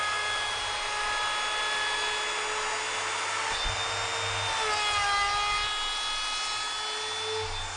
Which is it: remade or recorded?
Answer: recorded